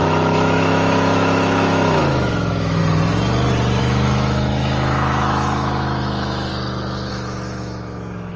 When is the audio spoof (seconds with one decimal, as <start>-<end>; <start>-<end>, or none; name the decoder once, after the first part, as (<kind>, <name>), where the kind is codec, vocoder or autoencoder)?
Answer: 0.0-2.8 (autoencoder, DAC-VAE); 3.8-6.5; 7.1-8.4